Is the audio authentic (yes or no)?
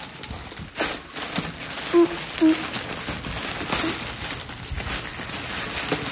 yes